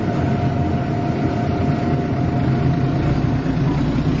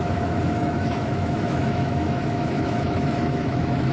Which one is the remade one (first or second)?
second